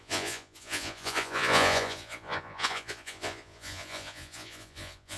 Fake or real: fake